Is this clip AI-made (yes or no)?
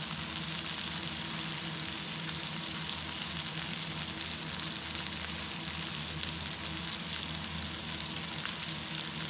no